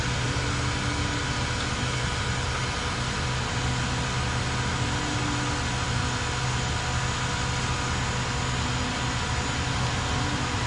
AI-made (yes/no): no